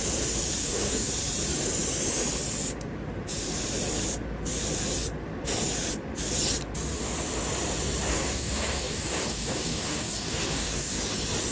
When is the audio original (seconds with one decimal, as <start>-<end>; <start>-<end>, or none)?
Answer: 0.0-0.6; 1.1-8.1; 11.0-11.5